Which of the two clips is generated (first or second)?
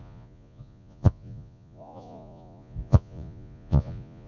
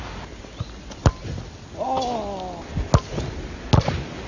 first